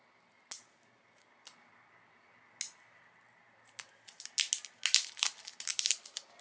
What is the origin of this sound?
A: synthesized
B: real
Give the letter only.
B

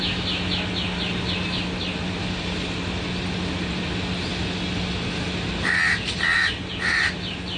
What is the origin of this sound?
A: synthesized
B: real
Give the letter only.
B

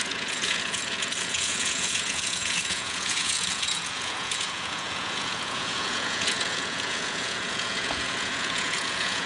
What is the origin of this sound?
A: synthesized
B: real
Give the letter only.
A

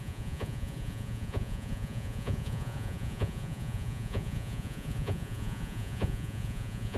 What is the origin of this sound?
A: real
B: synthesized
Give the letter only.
B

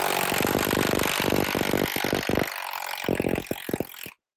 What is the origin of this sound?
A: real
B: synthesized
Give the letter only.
A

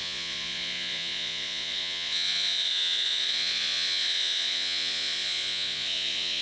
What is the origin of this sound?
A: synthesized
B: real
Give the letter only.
A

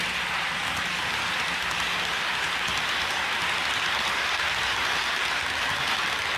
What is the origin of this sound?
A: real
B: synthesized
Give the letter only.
A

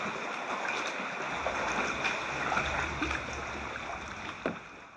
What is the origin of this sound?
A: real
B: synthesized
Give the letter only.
A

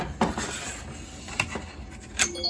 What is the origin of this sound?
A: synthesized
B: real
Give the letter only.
B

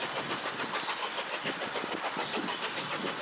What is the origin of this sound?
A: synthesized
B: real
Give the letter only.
B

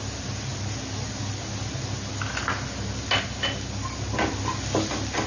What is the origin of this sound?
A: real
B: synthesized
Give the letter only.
A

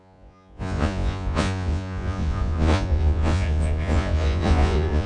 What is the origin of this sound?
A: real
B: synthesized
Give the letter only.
B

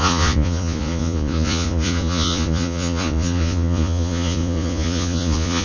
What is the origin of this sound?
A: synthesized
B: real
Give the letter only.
A